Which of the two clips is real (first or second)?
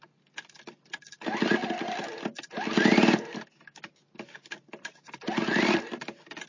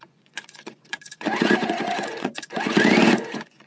first